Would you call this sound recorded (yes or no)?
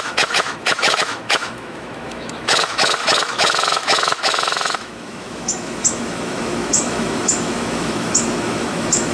no